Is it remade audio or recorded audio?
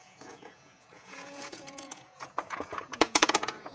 remade